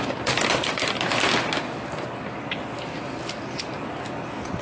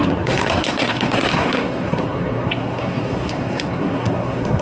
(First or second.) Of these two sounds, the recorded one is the first